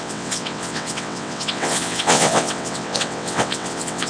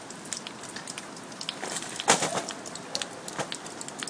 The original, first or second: second